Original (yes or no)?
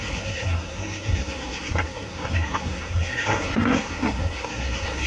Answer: no